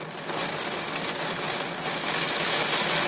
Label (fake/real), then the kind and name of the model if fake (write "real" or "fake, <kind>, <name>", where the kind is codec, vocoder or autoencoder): real